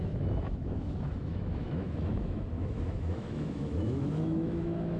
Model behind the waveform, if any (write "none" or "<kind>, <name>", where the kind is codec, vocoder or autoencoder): autoencoder, DAC-VAE